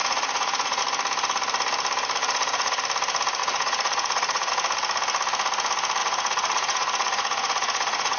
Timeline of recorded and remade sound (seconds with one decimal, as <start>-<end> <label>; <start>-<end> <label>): 0.0-0.8 remade; 0.8-2.2 recorded; 2.2-2.8 remade; 2.8-3.4 recorded; 3.4-4.5 remade; 4.5-6.0 recorded; 6.0-8.2 remade